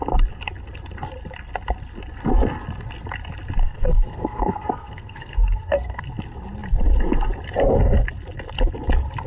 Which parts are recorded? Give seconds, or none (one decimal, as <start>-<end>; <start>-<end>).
0.0-3.6; 6.0-9.3